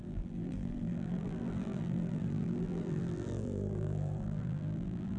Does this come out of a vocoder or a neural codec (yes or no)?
yes